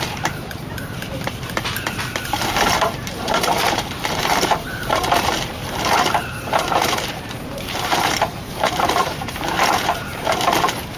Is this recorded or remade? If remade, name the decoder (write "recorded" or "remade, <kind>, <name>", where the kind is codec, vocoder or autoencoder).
remade, vocoder, BigVGAN v2